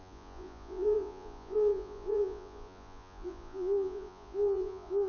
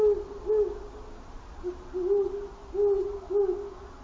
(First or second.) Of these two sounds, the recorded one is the second